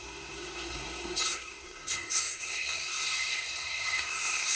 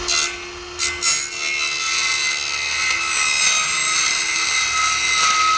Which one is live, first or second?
second